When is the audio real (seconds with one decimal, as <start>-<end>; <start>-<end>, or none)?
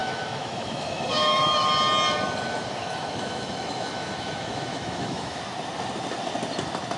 1.7-2.8; 5.4-7.0